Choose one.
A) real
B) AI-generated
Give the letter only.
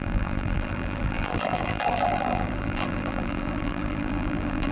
B